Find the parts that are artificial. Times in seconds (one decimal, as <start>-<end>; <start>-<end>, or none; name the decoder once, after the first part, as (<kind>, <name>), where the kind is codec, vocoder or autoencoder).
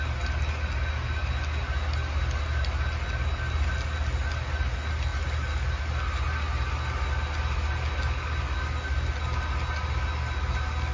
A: none